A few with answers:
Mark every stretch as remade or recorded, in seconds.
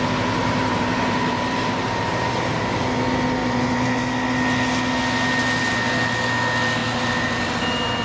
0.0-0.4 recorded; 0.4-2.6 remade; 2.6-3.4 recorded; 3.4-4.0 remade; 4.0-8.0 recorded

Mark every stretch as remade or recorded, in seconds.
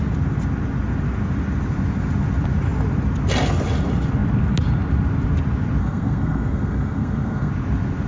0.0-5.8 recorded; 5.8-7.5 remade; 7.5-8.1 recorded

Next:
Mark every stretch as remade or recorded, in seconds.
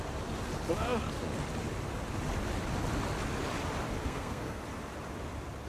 0.0-4.0 recorded; 4.0-4.6 remade; 4.6-5.7 recorded